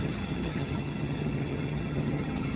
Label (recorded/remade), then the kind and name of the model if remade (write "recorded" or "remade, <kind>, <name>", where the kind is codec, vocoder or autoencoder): remade, vocoder, HiFi-GAN